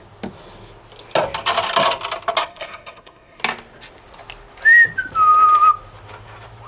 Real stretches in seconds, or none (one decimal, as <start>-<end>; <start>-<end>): 0.0-2.4; 3.4-6.7